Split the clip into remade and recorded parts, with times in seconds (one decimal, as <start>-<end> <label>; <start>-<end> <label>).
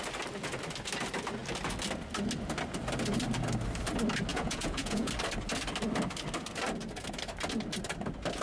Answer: 0.0-4.3 recorded; 4.3-5.1 remade; 5.1-8.4 recorded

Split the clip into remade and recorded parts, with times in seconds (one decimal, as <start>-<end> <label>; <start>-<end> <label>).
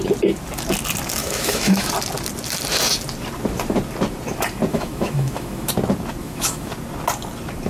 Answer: 0.0-1.2 recorded; 1.2-1.9 remade; 1.9-4.7 recorded; 4.7-5.7 remade; 5.7-6.2 recorded; 6.2-6.7 remade; 6.7-7.7 recorded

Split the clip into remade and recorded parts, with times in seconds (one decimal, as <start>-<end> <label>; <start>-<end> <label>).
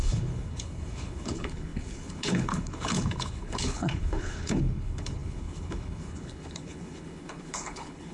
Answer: 0.0-8.1 remade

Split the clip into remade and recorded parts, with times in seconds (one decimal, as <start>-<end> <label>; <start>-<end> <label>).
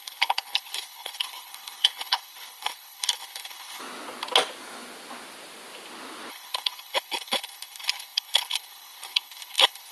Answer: 0.0-3.8 remade; 3.8-6.3 recorded; 6.3-9.9 remade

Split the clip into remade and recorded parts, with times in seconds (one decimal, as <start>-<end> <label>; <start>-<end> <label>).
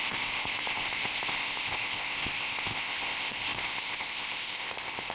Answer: 0.0-5.1 remade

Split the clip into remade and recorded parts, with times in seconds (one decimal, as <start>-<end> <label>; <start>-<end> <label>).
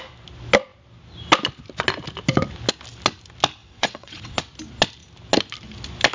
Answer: 0.0-3.6 recorded; 3.6-4.4 remade; 4.4-6.1 recorded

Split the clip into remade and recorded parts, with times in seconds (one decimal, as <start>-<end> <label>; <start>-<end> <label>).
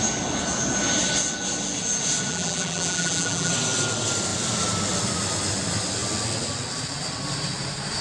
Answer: 0.0-2.3 recorded; 2.3-3.5 remade; 3.5-8.0 recorded